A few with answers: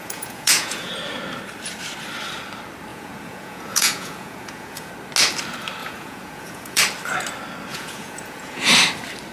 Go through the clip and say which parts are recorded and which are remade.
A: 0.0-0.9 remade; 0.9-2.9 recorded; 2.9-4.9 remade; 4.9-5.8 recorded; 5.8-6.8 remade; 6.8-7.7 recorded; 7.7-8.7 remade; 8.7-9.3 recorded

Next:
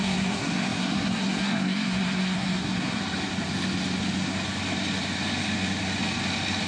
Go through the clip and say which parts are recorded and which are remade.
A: 0.0-3.0 remade; 3.0-6.7 recorded